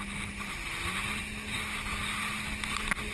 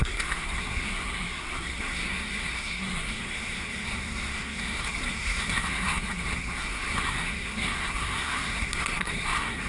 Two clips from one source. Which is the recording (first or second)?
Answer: first